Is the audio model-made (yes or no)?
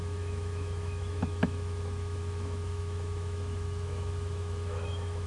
yes